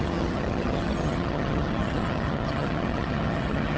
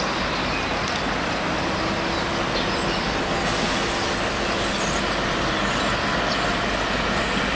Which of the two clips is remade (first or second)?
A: first